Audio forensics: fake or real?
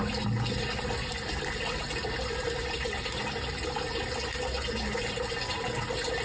real